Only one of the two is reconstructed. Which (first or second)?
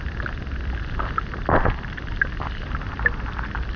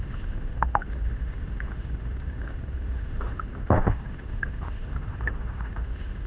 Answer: second